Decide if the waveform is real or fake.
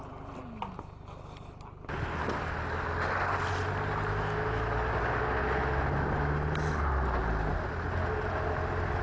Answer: real